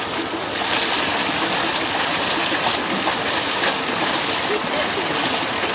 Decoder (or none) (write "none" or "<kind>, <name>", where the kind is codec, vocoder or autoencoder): none